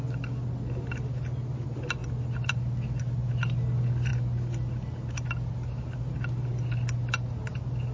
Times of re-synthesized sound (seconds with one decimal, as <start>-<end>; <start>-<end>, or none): none